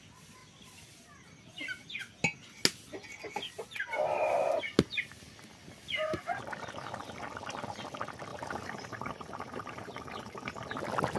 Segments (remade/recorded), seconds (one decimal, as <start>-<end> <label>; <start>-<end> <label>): 0.0-8.3 recorded; 8.3-10.6 remade; 10.6-11.2 recorded